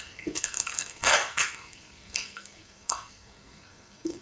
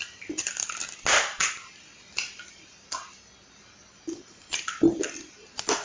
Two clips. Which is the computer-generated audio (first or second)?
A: first